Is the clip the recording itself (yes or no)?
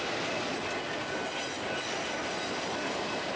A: yes